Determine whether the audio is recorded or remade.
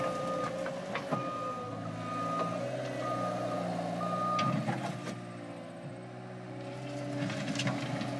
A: recorded